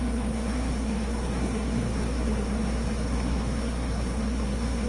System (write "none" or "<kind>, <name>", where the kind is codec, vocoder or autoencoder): codec, SNAC